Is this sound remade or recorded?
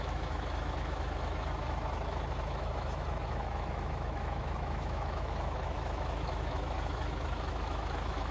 remade